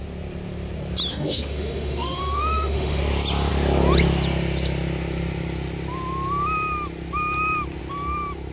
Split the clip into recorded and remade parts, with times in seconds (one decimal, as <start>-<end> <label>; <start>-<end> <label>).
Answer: 0.0-1.1 recorded; 1.1-3.0 remade; 3.0-8.5 recorded